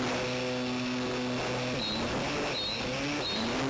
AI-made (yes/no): no